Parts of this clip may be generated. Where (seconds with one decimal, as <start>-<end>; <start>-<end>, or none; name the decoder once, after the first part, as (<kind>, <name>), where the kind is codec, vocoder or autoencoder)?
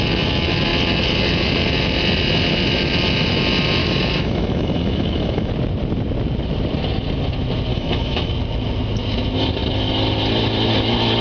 3.8-5.5 (autoencoder, DAC-VAE); 7.7-8.3